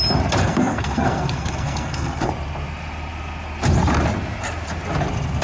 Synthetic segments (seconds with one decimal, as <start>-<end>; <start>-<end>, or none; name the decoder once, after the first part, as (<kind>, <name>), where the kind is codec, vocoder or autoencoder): 0.4-2.3 (codec, SNAC)